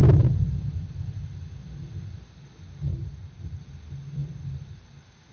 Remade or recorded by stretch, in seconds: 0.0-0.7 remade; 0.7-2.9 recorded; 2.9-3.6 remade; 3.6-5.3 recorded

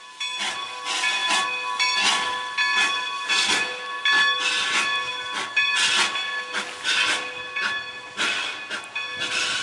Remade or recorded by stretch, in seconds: 0.0-9.6 recorded